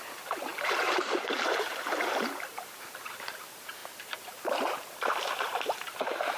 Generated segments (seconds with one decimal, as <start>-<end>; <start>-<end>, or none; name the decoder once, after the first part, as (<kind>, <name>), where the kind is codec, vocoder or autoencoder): 0.0-6.4 (vocoder, BigVGAN v2)